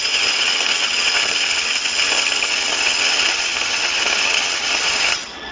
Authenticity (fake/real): fake